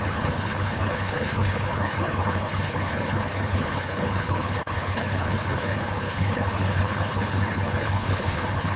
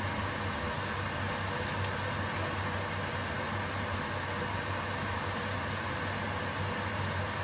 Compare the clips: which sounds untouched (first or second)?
second